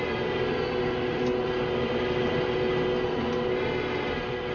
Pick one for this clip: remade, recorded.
recorded